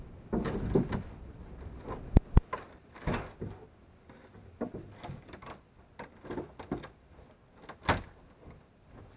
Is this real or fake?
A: real